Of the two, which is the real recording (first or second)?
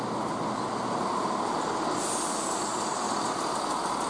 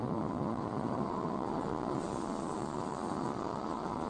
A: first